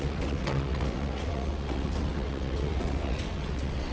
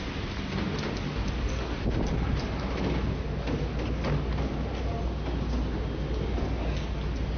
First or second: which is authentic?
second